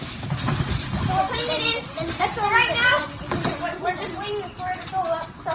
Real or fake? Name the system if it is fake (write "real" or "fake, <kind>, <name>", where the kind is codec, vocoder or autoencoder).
real